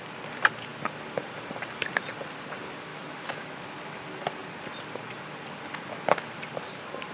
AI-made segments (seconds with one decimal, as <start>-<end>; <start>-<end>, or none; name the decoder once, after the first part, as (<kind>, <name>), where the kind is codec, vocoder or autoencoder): 2.9-3.6 (autoencoder, DAC-VAE)